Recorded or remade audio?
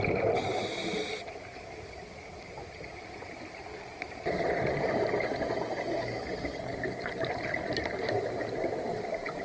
recorded